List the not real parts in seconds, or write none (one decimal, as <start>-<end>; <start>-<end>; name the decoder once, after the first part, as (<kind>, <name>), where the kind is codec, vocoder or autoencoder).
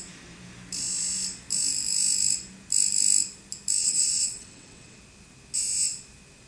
3.8-5.0 (vocoder, WaveNeXt)